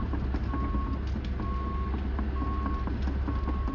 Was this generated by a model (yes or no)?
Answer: no